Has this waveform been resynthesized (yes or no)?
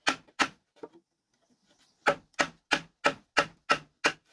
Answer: no